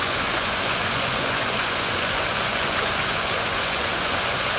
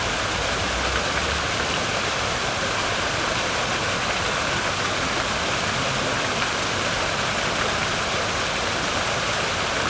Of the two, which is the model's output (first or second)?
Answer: first